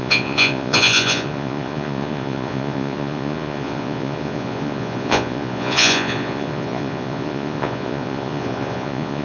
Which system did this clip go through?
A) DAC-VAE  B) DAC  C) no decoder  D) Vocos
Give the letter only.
D